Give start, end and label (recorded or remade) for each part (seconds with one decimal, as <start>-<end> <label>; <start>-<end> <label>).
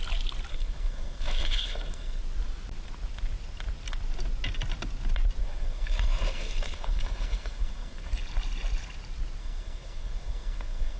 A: 0.0-0.5 recorded; 0.5-2.2 remade; 2.2-5.4 recorded; 5.4-8.1 remade; 8.1-9.4 recorded; 9.4-11.0 remade